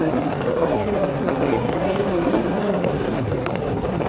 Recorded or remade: remade